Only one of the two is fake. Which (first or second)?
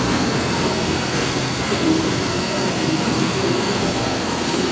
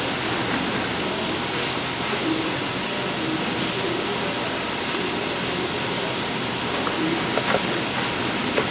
first